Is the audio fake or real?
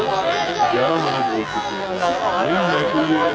fake